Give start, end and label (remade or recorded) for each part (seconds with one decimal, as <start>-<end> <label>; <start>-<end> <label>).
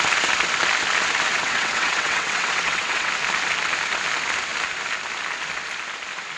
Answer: 0.0-1.3 recorded; 1.3-3.1 remade; 3.1-6.4 recorded